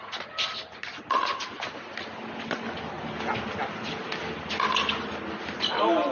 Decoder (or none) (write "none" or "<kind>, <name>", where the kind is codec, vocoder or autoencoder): none